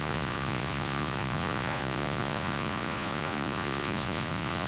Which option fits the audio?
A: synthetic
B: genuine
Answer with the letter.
A